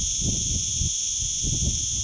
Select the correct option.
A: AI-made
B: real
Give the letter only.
A